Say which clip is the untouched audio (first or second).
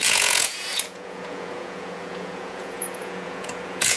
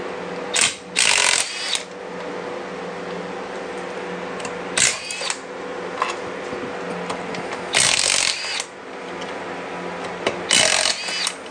second